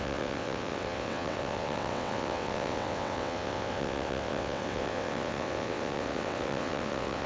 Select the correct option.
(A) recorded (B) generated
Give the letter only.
B